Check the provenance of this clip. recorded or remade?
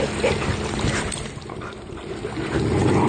recorded